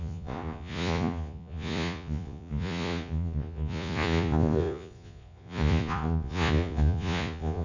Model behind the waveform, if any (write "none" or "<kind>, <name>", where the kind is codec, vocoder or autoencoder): vocoder, Vocos